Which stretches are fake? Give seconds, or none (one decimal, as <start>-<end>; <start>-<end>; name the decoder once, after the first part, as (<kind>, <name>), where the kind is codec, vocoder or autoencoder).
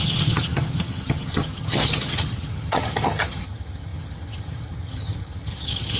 0.0-6.0 (vocoder, HiFi-GAN)